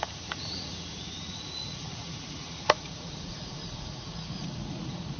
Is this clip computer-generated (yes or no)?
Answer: yes